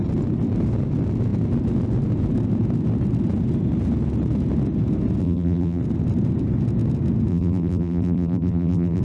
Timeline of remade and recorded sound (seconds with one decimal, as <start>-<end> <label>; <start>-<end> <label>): 0.0-5.2 recorded; 5.2-5.8 remade; 5.8-7.3 recorded; 7.3-9.0 remade